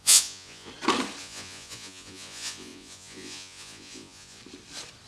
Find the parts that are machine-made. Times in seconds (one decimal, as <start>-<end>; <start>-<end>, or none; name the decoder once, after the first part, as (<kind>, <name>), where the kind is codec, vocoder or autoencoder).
0.0-0.7 (vocoder, Vocos); 1.2-4.4